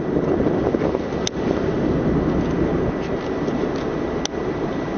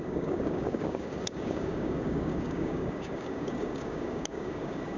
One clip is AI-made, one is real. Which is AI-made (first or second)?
second